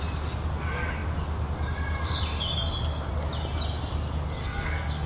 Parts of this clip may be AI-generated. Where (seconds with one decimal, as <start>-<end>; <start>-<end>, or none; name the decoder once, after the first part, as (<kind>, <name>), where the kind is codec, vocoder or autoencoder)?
4.4-5.1 (codec, SNAC)